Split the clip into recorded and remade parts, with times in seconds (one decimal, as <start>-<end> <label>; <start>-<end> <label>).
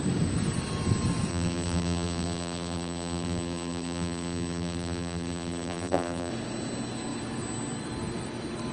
0.0-1.3 recorded; 1.3-6.3 remade; 6.3-8.7 recorded